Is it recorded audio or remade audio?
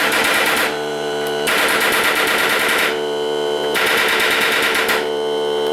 remade